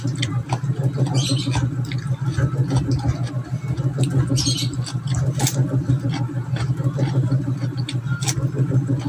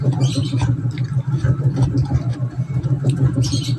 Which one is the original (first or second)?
first